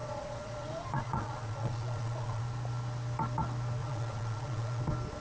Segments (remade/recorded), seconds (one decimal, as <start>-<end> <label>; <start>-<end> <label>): 0.0-2.4 remade; 2.4-3.8 recorded; 3.8-4.8 remade; 4.8-5.2 recorded